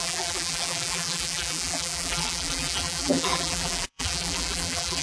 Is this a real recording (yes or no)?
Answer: no